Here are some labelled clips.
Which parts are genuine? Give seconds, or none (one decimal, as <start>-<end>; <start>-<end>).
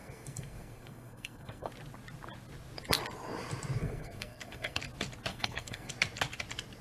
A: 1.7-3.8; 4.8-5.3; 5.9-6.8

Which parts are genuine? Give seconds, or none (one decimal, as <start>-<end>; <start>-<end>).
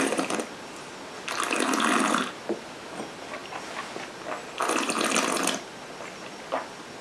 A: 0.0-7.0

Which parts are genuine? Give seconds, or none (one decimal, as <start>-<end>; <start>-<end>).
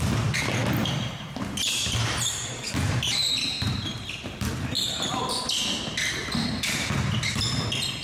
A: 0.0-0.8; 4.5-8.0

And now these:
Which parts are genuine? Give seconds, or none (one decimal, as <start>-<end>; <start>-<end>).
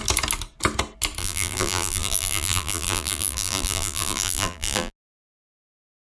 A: 0.0-1.2; 4.9-6.1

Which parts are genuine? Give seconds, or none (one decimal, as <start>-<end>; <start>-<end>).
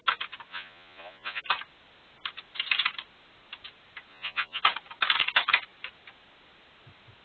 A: 0.0-0.5; 1.4-4.1; 4.6-7.2